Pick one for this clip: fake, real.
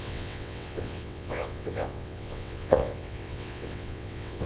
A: fake